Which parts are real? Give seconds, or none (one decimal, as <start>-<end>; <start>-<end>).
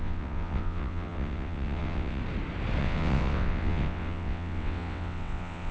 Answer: 2.2-2.8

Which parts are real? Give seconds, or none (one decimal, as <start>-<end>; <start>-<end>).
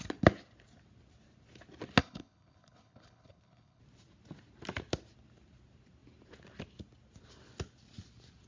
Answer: 0.0-2.0; 3.8-8.5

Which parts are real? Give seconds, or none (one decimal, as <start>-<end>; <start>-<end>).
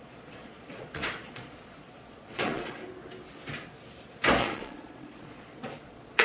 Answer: 2.8-4.4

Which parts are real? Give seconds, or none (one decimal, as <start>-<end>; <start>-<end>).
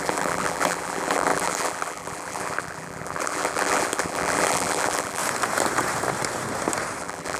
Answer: 5.2-7.0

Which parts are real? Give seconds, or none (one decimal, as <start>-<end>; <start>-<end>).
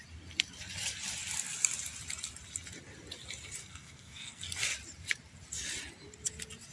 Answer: 0.0-3.6; 4.4-6.7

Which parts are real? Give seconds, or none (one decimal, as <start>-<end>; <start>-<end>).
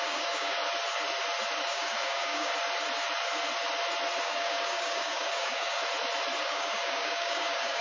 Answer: 0.6-1.6; 2.5-4.2; 5.8-6.4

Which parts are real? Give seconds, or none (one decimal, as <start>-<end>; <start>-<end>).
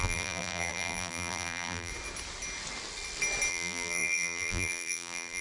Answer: 1.9-3.5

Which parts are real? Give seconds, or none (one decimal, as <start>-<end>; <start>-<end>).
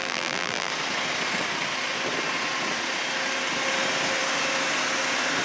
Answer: 0.7-5.4